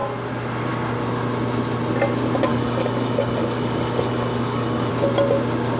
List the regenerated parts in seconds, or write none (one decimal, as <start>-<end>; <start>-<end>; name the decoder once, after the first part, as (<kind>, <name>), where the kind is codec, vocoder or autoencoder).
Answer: 2.5-4.9 (codec, DAC)